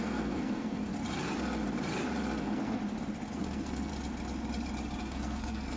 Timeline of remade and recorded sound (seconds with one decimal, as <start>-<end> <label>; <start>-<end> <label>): 0.0-0.9 remade; 0.9-2.4 recorded; 2.4-2.8 remade; 2.8-3.3 recorded; 3.3-3.9 remade; 3.9-5.0 recorded; 5.0-5.8 remade